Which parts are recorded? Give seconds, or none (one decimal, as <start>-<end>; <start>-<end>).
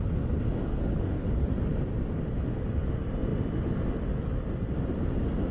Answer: 0.0-0.7; 1.5-5.5